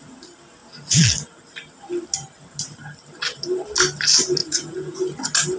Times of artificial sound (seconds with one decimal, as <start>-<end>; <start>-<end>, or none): 4.4-5.0